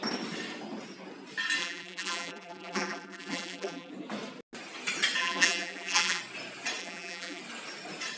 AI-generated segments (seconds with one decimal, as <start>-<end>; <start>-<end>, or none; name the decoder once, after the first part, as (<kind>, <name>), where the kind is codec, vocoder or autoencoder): 1.6-3.9 (vocoder, BigVGAN v2); 5.2-6.2; 6.8-7.4